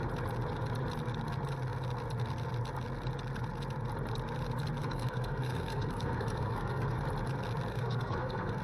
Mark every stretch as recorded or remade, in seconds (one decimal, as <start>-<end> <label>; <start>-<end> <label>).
0.0-4.8 recorded; 4.8-7.0 remade; 7.0-7.7 recorded; 7.7-8.6 remade